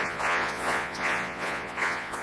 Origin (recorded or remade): remade